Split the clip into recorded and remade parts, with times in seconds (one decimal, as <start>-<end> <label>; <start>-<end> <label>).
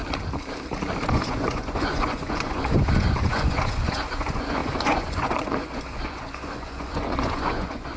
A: 0.0-1.1 recorded; 1.1-8.0 remade